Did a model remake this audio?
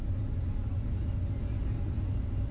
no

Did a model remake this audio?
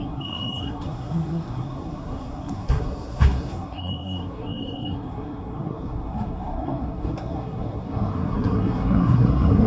yes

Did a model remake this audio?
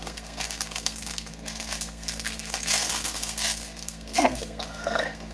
yes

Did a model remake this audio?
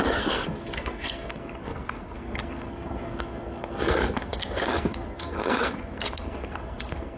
yes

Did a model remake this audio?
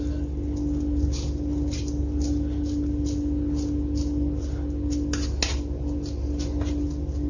no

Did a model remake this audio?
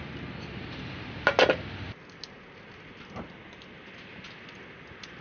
no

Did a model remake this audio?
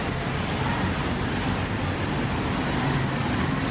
no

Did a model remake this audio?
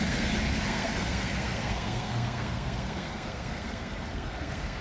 yes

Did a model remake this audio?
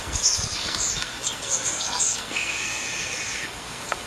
yes